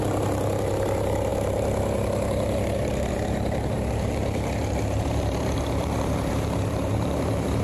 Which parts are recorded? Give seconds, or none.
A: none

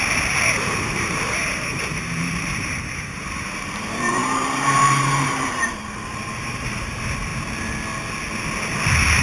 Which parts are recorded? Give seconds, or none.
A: 7.3-9.2

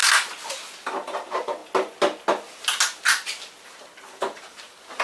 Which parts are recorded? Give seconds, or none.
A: 0.0-0.9; 1.6-3.7

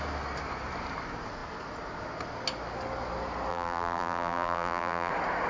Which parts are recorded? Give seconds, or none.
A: 0.0-3.5; 5.1-5.5

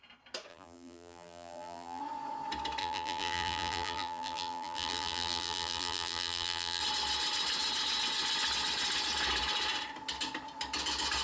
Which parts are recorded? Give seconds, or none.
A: 0.0-0.5; 2.0-2.8; 6.8-11.2

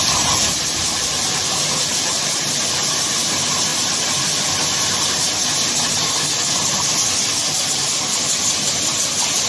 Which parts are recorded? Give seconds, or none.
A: 0.0-0.8; 2.6-3.7; 4.2-9.5

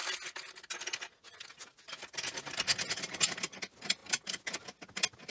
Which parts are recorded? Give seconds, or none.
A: 0.0-5.3